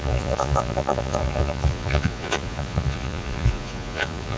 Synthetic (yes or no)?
yes